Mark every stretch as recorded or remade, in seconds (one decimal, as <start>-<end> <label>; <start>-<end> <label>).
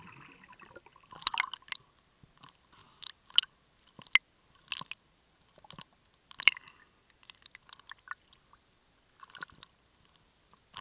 0.0-10.8 recorded